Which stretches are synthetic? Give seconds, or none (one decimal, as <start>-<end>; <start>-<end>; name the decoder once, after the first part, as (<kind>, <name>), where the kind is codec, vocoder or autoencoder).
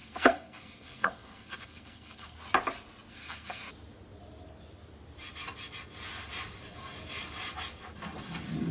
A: 0.0-2.4 (codec, SNAC); 3.1-3.6